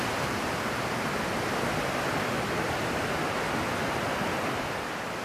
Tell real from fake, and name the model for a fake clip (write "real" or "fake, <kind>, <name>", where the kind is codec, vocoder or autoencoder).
real